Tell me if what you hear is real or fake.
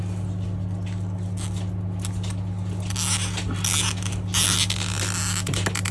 real